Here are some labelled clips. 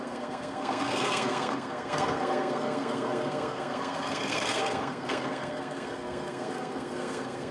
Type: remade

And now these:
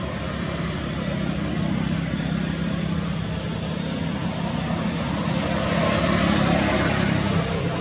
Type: recorded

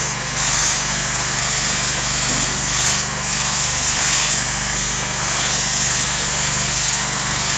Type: remade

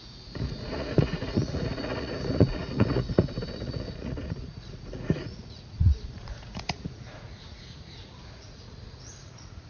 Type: remade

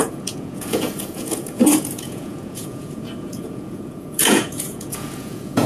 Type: remade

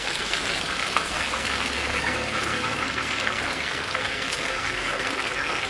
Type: remade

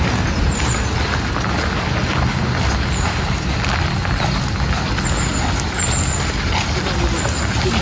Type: recorded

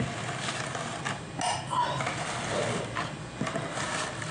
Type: recorded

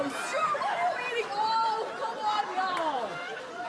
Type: remade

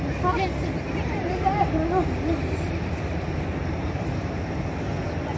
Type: recorded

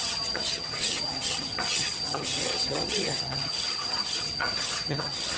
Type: remade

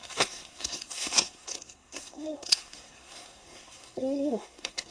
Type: remade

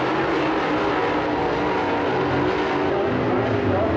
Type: recorded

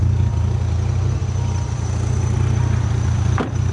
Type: recorded